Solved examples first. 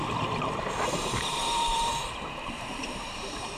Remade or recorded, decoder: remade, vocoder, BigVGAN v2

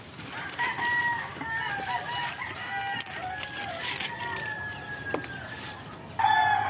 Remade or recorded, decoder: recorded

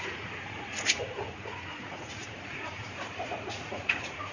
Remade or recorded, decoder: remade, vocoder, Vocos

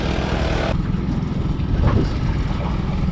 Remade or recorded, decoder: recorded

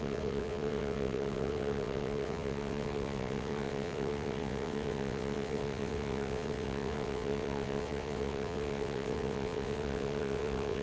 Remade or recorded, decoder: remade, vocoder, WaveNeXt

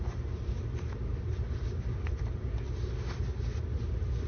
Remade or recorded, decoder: recorded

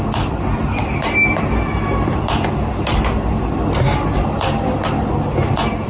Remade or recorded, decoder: recorded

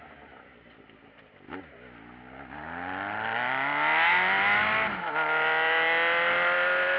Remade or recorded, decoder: recorded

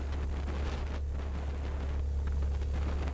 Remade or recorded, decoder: recorded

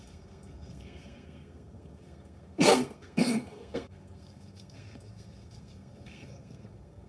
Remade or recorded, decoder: remade, codec, SNAC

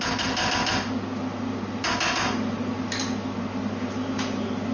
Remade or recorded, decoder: recorded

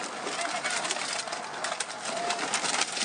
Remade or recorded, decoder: recorded